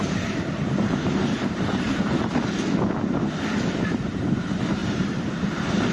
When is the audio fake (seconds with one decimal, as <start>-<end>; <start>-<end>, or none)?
0.0-1.9; 3.6-5.9